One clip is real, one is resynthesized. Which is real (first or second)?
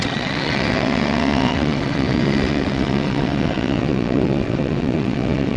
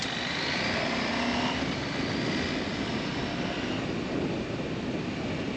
second